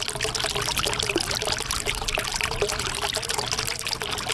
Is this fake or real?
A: real